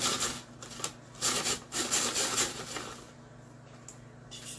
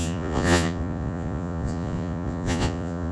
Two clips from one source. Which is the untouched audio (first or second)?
first